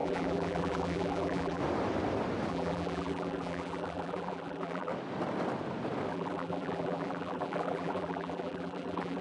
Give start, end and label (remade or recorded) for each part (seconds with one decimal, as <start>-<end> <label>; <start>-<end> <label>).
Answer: 0.0-1.6 remade; 1.6-2.5 recorded; 2.5-4.9 remade; 4.9-6.1 recorded; 6.1-9.2 remade